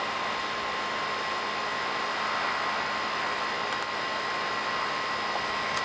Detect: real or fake real